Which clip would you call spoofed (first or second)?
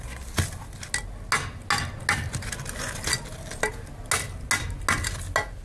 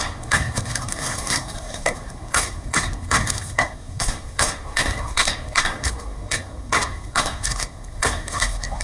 second